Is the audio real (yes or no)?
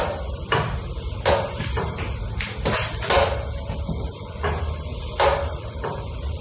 yes